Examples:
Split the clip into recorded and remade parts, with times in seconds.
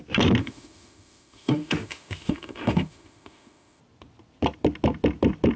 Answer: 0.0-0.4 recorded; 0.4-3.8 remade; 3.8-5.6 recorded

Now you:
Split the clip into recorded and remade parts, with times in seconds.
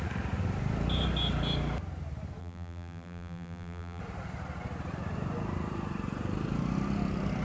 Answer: 0.0-2.4 recorded; 2.4-4.0 remade; 4.0-7.4 recorded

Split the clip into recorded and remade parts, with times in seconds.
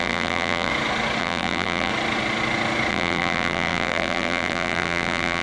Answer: 0.0-0.7 remade; 0.7-1.2 recorded; 1.2-1.9 remade; 1.9-2.9 recorded; 2.9-5.4 remade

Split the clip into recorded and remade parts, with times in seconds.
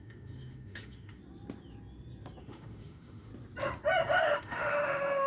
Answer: 0.0-1.2 remade; 1.2-2.4 recorded; 2.4-3.3 remade; 3.3-4.2 recorded; 4.2-5.3 remade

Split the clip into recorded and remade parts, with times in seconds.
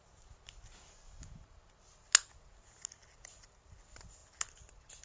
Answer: 0.0-5.0 recorded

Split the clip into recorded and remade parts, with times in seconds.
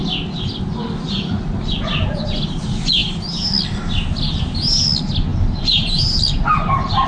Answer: 0.0-5.3 recorded; 5.3-6.0 remade; 6.0-7.1 recorded